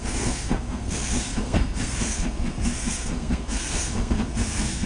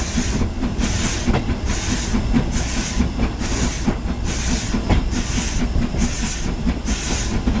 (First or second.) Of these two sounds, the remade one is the first